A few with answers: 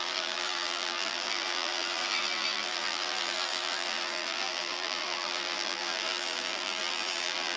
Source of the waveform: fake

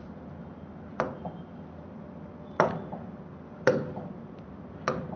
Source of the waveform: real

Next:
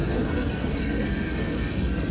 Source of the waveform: fake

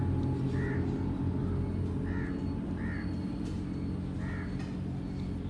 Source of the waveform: real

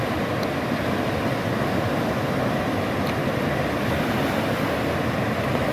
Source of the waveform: real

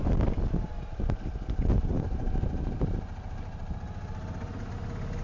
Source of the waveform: real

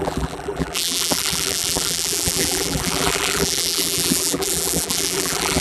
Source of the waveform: fake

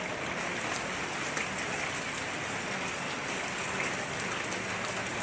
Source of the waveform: real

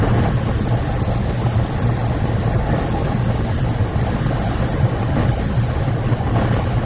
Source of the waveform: real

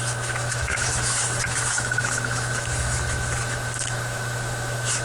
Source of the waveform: fake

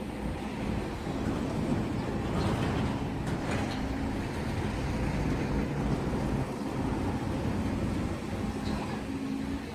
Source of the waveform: fake